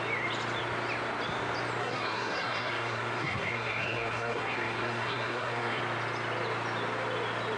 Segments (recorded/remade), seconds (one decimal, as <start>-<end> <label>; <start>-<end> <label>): 0.0-1.8 recorded; 1.8-5.8 remade; 5.8-7.6 recorded